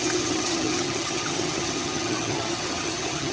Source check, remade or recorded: remade